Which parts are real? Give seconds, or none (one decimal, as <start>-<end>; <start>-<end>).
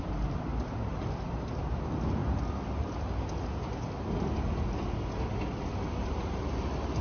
0.0-0.5; 1.0-7.0